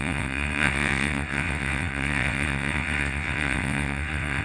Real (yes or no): no